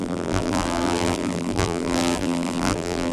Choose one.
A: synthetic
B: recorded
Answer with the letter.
A